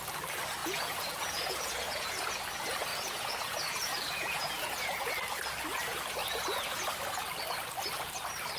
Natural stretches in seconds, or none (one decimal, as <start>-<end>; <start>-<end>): 0.0-0.6; 2.3-2.9; 5.1-6.2; 6.9-8.6